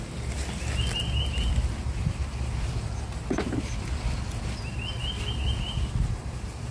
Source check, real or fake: real